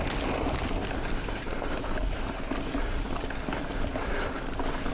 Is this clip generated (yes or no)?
no